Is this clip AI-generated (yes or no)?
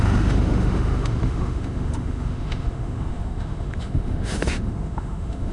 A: yes